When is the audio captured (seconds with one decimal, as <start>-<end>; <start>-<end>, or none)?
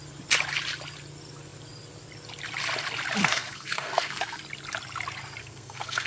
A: 0.0-3.2; 4.4-5.4